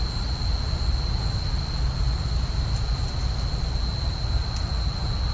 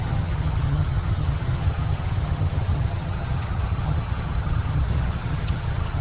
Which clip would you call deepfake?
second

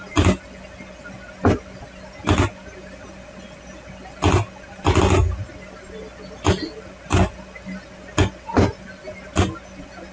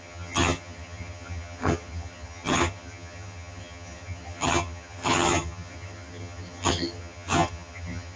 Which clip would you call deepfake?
second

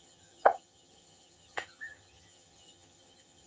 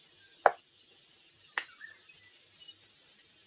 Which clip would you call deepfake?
first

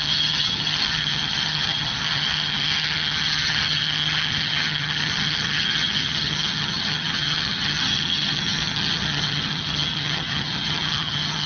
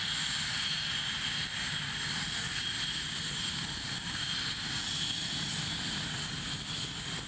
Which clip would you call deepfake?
first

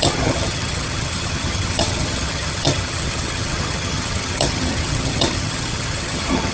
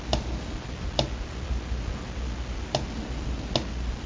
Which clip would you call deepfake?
first